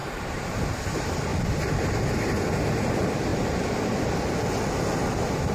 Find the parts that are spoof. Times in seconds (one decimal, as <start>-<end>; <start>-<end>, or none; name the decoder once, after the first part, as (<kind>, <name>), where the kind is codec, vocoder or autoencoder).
0.0-0.5 (vocoder, BigVGAN v2)